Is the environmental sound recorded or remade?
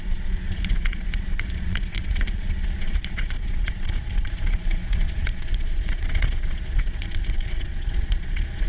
remade